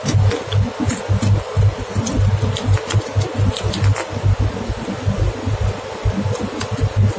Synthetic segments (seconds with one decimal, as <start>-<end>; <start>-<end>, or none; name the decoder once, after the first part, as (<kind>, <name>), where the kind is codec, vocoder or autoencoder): none